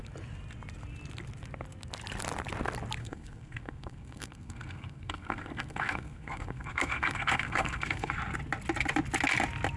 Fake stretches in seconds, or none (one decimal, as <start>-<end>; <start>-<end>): 3.0-8.1